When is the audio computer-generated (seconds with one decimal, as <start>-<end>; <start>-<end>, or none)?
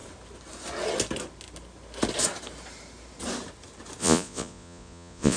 4.0-5.4